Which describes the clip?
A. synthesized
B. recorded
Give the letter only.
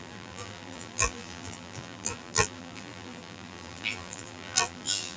A